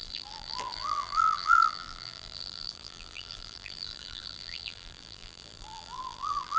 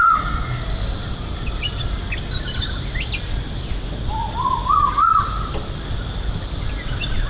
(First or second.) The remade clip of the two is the first